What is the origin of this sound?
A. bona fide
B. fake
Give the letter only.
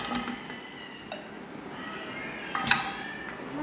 A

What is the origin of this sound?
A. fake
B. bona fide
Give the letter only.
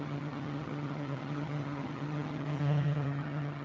A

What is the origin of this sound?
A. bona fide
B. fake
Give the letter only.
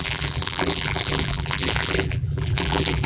B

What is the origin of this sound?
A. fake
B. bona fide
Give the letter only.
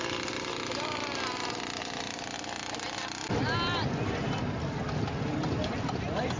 B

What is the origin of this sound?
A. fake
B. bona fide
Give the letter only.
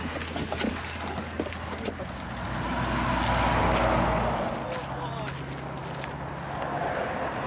B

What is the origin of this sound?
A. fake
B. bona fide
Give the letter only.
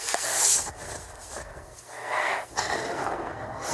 A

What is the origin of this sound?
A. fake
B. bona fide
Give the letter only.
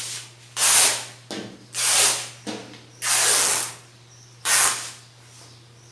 B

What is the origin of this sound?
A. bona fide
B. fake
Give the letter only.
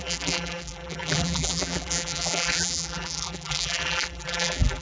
B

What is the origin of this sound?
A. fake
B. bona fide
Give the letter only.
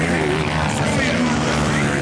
B